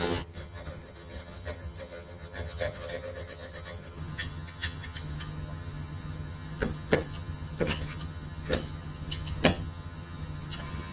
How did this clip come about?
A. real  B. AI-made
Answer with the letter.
B